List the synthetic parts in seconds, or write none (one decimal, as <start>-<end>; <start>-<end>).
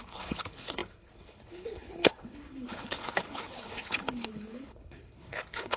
0.0-5.8